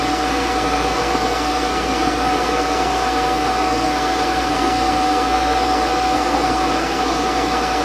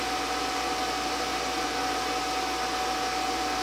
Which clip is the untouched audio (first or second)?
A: second